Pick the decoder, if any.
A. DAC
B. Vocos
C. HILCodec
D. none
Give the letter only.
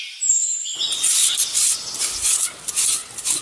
D